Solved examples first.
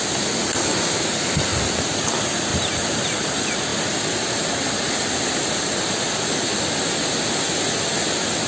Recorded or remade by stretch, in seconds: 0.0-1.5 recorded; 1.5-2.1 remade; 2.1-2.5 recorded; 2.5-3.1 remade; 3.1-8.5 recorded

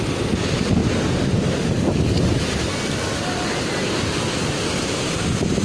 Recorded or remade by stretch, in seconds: 0.0-5.6 recorded

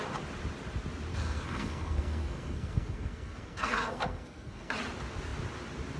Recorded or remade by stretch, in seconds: 0.0-1.1 recorded; 1.1-4.7 remade; 4.7-6.0 recorded

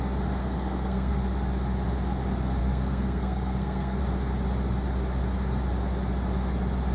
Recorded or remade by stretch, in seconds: 0.0-0.4 recorded; 0.4-1.1 remade; 1.1-2.6 recorded; 2.6-4.0 remade; 4.0-6.9 recorded

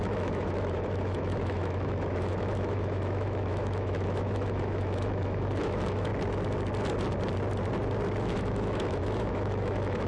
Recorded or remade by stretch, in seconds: 0.0-6.1 remade; 6.1-8.2 recorded; 8.2-10.1 remade

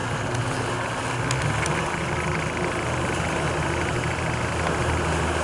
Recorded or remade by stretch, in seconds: 0.0-5.4 recorded

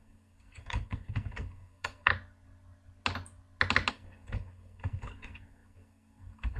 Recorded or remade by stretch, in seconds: 0.0-2.1 remade; 2.1-3.9 recorded; 3.9-6.6 remade